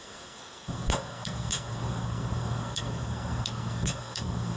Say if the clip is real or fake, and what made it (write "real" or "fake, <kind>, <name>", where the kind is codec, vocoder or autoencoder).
fake, codec, SNAC